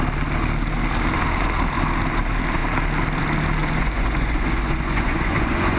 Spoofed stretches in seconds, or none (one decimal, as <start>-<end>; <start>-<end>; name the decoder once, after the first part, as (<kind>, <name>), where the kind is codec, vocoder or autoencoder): 3.6-5.8 (vocoder, Vocos)